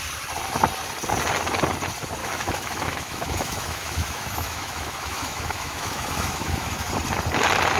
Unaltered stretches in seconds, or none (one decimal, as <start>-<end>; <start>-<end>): 0.0-2.2; 6.9-7.8